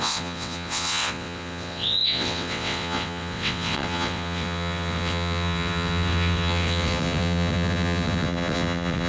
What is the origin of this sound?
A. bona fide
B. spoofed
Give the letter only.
B